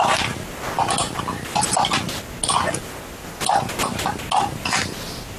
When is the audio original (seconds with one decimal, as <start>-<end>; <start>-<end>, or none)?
0.0-5.4